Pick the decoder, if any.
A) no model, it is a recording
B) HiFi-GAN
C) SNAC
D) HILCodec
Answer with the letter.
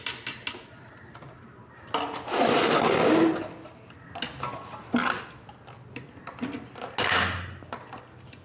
A